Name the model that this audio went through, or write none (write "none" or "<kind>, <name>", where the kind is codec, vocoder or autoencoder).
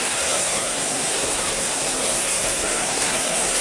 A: codec, SNAC